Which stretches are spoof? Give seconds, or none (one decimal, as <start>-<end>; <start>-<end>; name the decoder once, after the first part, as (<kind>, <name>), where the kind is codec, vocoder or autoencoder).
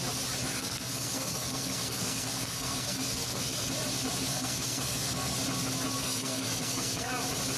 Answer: 0.4-3.7 (codec, SNAC); 4.3-5.4; 6.0-7.1